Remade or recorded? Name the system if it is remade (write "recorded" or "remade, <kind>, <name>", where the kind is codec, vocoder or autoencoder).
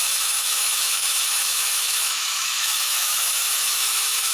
remade, autoencoder, DAC-VAE